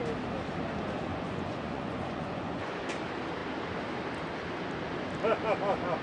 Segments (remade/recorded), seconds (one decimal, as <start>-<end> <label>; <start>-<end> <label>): 0.0-1.1 recorded; 1.1-2.8 remade; 2.8-6.0 recorded